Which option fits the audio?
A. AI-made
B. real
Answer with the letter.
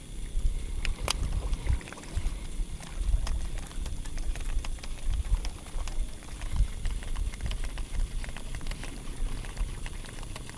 B